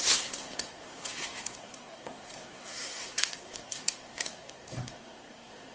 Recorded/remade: remade